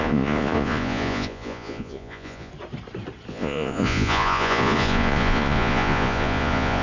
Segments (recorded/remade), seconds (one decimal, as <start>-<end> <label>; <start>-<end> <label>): 0.0-2.5 remade; 2.5-3.3 recorded; 3.3-6.8 remade